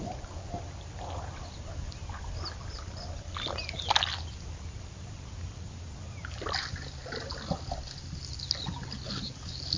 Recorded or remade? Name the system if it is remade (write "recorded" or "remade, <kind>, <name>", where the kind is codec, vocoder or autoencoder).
recorded